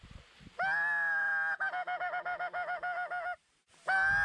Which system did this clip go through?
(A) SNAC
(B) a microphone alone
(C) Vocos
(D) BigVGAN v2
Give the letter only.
B